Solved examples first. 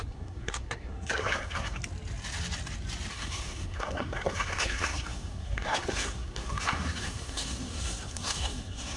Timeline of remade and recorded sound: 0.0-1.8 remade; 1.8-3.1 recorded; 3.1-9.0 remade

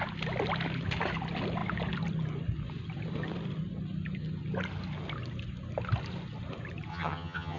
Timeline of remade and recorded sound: 0.0-6.9 recorded; 6.9-7.6 remade

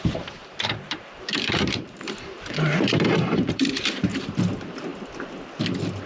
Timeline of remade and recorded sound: 0.0-4.9 remade; 4.9-6.1 recorded

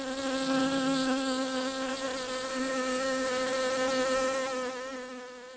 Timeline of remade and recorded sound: 0.0-0.6 recorded; 0.6-1.9 remade; 1.9-2.5 recorded; 2.5-3.5 remade; 3.5-5.6 recorded

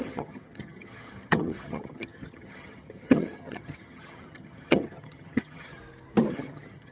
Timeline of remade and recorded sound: 0.0-5.8 remade; 5.8-6.3 recorded; 6.3-6.9 remade

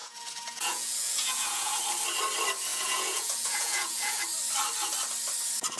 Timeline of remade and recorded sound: 0.0-1.8 remade; 1.8-2.7 recorded; 2.7-4.2 remade; 4.2-5.8 recorded